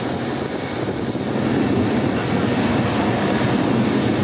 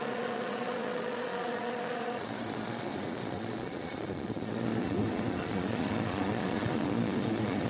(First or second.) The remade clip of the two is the second